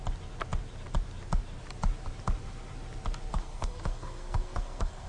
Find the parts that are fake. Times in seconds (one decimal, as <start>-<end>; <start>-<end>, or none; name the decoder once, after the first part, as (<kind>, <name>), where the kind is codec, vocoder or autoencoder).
3.3-5.1 (codec, SNAC)